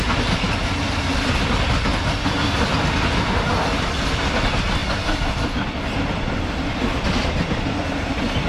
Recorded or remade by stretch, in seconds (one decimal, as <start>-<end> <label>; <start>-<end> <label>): 0.0-8.5 recorded